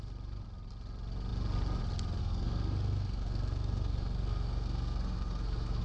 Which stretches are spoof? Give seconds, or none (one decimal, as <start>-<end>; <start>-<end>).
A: 2.2-5.8